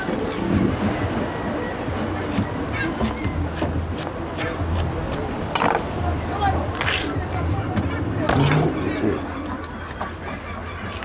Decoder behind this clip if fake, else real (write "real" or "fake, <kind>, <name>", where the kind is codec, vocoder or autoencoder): real